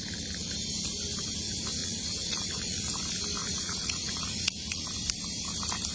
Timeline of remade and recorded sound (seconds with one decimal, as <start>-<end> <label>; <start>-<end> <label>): 0.0-1.8 recorded; 1.8-2.8 remade; 2.8-3.4 recorded; 3.4-4.9 remade; 4.9-5.9 recorded